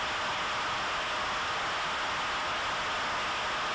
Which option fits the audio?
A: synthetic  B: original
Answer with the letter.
B